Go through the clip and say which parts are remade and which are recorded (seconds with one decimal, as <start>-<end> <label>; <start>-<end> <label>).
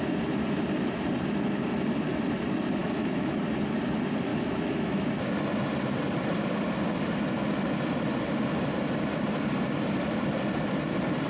0.0-2.8 recorded; 2.8-3.4 remade; 3.4-4.3 recorded; 4.3-5.1 remade; 5.1-11.3 recorded